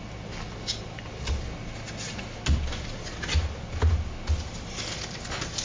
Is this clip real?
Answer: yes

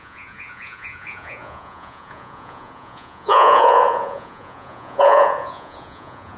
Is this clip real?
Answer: no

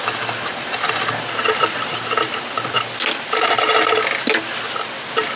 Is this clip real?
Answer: yes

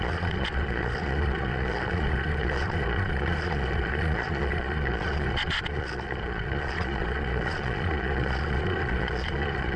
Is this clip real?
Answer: no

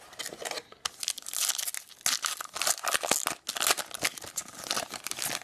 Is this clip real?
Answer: yes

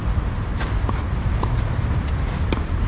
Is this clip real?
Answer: yes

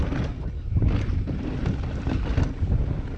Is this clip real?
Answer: yes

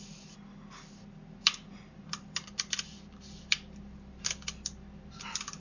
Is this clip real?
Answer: no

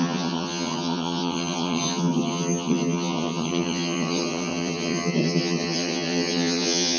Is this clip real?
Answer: no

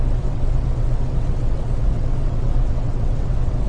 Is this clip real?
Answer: no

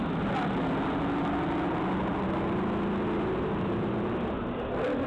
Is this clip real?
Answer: yes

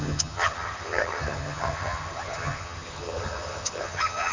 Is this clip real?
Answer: no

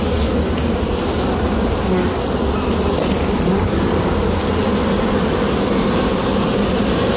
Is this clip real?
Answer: yes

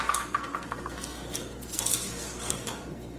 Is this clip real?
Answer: no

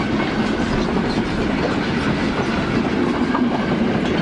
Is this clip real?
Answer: yes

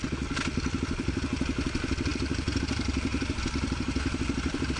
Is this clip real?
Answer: yes